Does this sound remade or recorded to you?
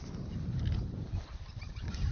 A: remade